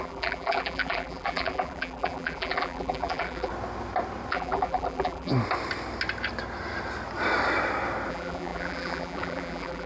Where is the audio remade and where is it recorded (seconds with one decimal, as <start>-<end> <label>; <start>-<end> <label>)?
0.0-3.5 remade; 3.5-4.3 recorded; 4.3-5.3 remade; 5.3-8.1 recorded; 8.1-9.9 remade